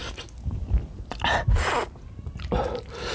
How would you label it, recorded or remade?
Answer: recorded